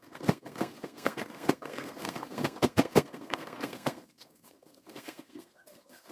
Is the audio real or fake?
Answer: fake